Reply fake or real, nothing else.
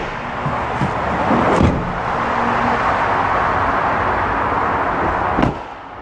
real